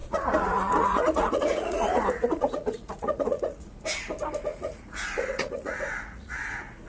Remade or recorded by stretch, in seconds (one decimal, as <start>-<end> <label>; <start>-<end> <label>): 0.0-3.8 remade; 3.8-4.5 recorded; 4.5-6.9 remade